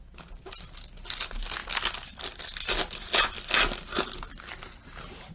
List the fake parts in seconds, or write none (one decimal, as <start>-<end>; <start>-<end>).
none